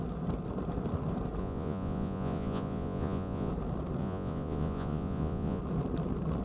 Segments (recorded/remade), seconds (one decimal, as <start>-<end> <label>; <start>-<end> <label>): 0.0-1.4 recorded; 1.4-3.5 remade; 3.5-4.0 recorded; 4.0-5.6 remade; 5.6-6.4 recorded